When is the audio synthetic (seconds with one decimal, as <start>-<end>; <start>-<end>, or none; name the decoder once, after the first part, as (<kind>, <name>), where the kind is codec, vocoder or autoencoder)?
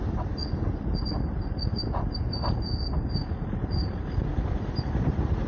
none